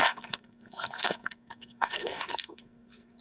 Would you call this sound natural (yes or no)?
no